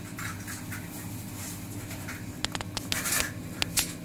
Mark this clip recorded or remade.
recorded